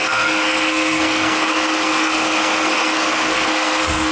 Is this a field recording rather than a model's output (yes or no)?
no